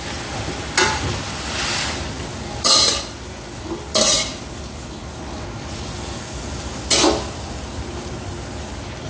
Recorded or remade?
recorded